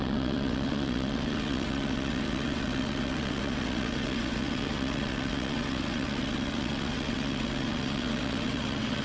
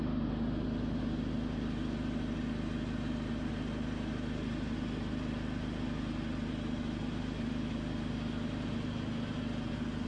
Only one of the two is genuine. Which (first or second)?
second